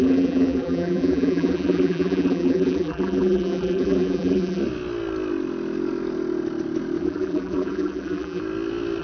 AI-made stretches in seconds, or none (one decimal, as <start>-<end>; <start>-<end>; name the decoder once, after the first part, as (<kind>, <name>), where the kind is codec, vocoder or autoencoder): 0.0-4.6 (vocoder, BigVGAN v2); 7.0-8.4